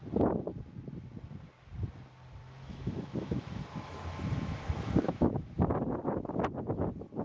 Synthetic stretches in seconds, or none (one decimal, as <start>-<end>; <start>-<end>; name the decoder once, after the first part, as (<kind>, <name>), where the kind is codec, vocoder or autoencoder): 2.4-5.5 (autoencoder, DAC-VAE)